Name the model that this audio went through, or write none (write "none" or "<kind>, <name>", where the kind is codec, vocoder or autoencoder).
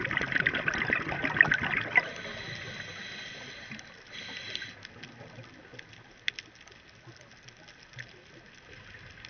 none